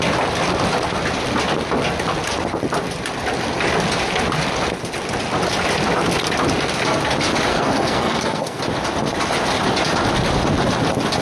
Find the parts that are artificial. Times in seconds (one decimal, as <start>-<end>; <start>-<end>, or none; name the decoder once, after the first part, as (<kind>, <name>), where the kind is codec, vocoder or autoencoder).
7.5-8.6 (codec, SNAC)